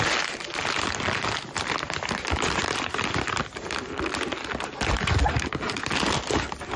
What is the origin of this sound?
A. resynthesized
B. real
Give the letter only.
B